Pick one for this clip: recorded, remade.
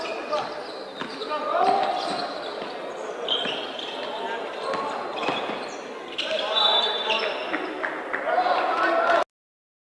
recorded